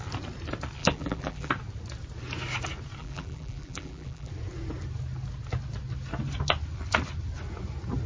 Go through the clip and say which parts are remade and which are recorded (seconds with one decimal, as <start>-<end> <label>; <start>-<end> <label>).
0.0-0.8 recorded; 0.8-1.5 remade; 1.5-3.0 recorded; 3.0-4.3 remade; 4.3-8.1 recorded